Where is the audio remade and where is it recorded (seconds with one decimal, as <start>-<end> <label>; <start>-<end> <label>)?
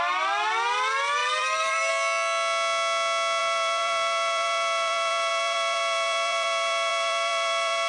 0.0-1.2 recorded; 1.2-1.9 remade; 1.9-3.4 recorded; 3.4-7.9 remade